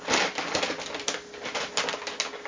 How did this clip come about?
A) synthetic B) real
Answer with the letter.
B